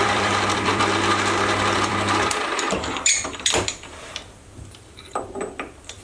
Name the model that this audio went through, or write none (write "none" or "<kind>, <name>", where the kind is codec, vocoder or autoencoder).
vocoder, BigVGAN v2